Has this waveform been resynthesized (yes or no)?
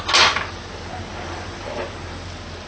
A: no